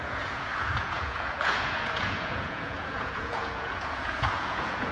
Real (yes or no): no